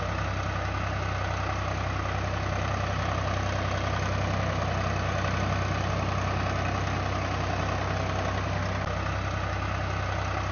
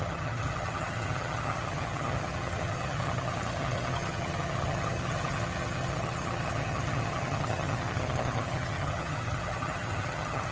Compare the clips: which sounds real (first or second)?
first